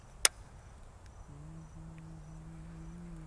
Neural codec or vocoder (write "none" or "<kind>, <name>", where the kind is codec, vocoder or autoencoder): none